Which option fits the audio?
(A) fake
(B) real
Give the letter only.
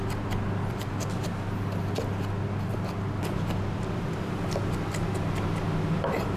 B